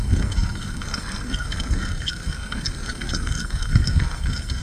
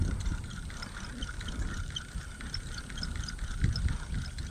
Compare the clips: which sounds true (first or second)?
second